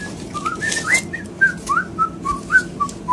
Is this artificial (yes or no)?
no